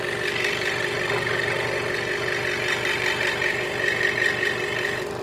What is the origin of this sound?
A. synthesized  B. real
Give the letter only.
B